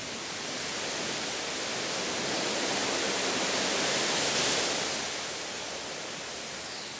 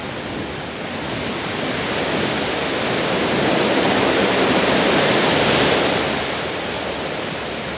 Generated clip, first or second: second